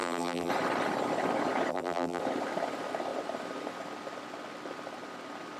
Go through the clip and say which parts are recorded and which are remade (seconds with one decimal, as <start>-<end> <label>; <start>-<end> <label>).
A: 0.0-0.5 remade; 0.5-1.7 recorded; 1.7-2.2 remade; 2.2-5.6 recorded